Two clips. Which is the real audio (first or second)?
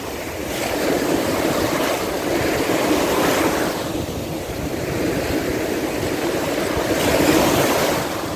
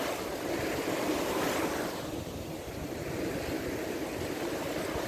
second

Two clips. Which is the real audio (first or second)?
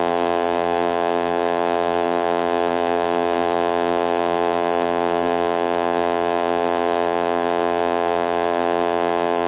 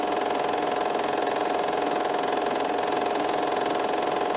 second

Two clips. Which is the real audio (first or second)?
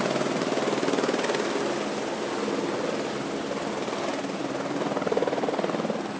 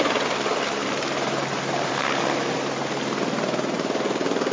first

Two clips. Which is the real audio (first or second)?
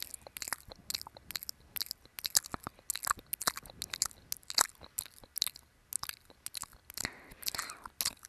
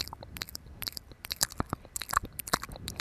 first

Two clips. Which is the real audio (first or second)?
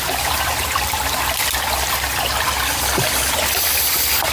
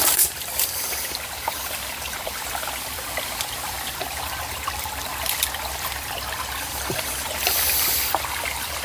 first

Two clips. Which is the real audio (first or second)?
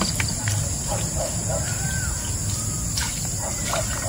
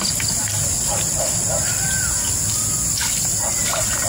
second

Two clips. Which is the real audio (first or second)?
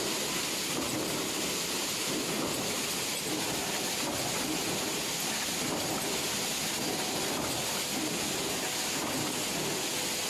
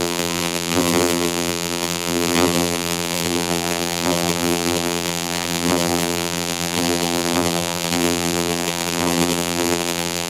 first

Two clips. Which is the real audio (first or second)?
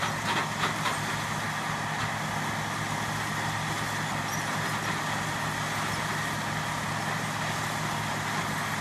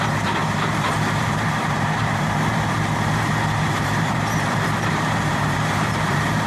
first